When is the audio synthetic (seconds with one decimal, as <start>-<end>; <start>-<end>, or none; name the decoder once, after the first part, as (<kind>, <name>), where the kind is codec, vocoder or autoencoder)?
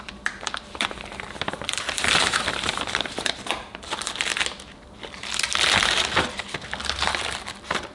0.0-4.3 (vocoder, BigVGAN v2); 4.8-5.2; 6.8-7.9